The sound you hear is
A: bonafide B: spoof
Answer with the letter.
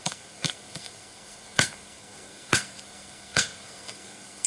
B